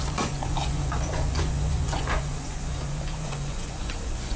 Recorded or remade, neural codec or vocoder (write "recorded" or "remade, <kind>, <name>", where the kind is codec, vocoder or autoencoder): remade, vocoder, Vocos